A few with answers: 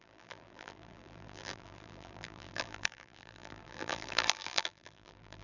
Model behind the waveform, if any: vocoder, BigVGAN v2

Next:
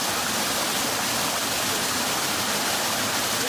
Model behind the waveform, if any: none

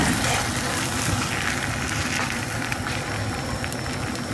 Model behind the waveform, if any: none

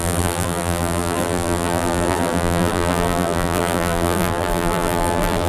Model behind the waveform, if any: vocoder, BigVGAN v2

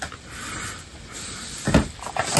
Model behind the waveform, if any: none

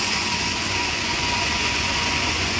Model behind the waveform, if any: vocoder, Vocos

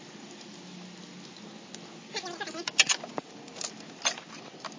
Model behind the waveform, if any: none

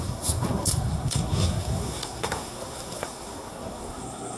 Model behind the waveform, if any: codec, SNAC